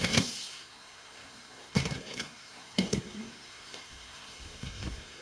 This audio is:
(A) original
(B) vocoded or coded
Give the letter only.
B